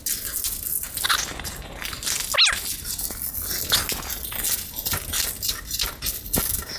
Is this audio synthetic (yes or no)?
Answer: no